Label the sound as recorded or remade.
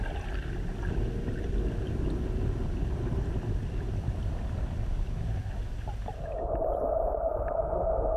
recorded